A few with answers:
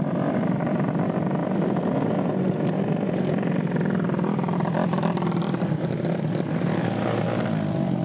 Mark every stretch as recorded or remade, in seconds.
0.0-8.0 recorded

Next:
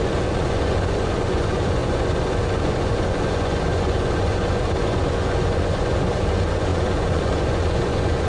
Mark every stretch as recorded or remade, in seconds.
0.0-8.3 remade

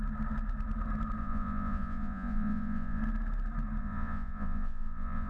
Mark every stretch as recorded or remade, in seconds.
0.0-1.2 recorded; 1.2-3.0 remade; 3.0-3.8 recorded; 3.8-5.3 remade

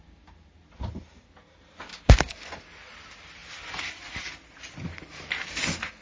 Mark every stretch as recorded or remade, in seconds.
0.0-1.9 recorded; 1.9-2.5 remade; 2.5-6.0 recorded

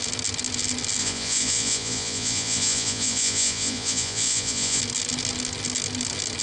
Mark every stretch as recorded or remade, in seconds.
0.0-1.0 recorded; 1.0-4.8 remade; 4.8-6.4 recorded